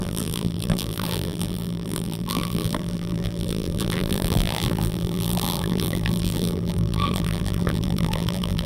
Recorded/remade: remade